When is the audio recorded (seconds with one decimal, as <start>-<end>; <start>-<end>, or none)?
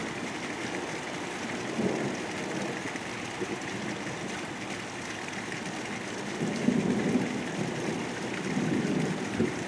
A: 0.0-9.7